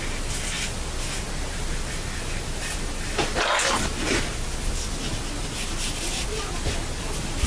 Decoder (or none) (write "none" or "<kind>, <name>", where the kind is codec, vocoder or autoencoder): none